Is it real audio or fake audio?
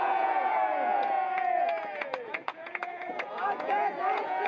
fake